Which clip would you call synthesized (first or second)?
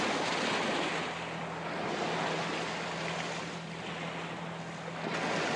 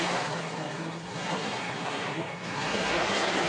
second